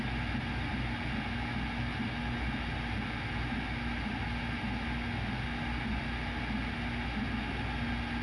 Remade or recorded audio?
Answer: recorded